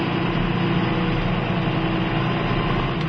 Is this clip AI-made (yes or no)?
no